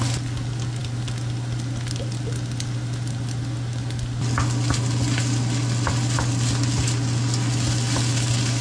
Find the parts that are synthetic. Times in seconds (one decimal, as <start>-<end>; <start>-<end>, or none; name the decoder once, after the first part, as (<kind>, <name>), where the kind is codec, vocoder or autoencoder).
none